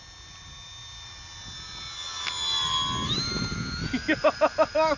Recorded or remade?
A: recorded